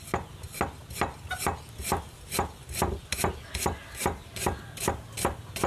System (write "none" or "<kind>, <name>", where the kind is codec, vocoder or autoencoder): none